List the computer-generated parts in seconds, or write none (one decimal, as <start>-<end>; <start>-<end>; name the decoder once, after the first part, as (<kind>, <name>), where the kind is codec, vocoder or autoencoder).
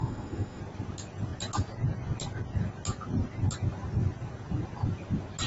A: 0.0-0.6 (autoencoder, DAC-VAE)